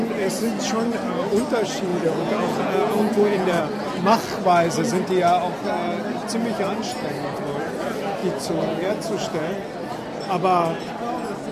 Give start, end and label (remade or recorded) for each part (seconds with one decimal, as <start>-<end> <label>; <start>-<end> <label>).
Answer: 0.0-1.9 recorded; 1.9-3.6 remade; 3.6-8.2 recorded; 8.2-9.5 remade; 9.5-11.5 recorded